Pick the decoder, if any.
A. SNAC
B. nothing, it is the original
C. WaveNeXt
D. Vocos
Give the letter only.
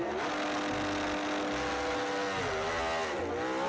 B